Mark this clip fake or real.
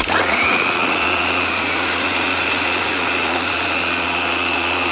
fake